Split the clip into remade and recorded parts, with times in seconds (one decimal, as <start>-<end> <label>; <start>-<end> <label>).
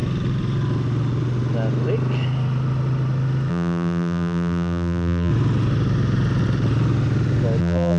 0.0-3.5 recorded; 3.5-5.3 remade; 5.3-7.6 recorded; 7.6-8.0 remade